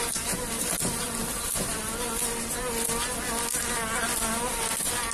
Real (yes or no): yes